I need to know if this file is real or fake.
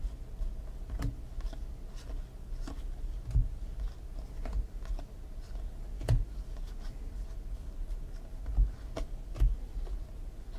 real